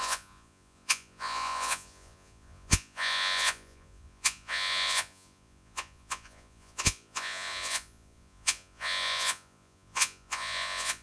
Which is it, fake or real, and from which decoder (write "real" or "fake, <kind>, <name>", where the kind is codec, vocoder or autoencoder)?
fake, vocoder, Vocos